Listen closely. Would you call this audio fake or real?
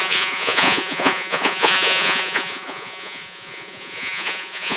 fake